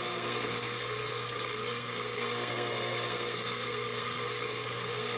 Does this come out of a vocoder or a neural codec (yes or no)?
yes